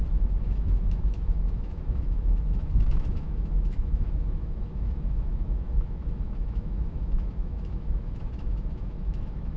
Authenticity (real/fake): fake